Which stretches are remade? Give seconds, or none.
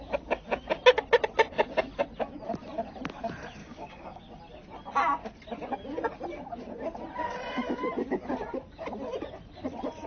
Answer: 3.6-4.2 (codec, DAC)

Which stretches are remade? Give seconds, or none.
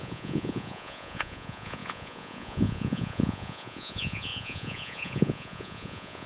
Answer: 0.0-6.3 (vocoder, Vocos)